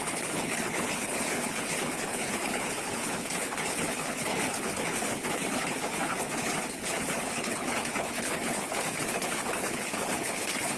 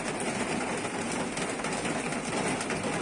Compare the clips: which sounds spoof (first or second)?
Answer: first